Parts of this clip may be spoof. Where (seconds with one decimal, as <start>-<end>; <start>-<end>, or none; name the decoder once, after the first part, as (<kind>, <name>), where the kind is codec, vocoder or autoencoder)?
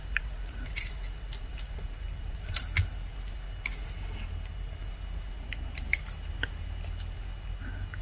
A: 0.0-0.9 (vocoder, BigVGAN v2); 1.4-2.6